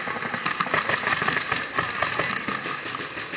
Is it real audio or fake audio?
real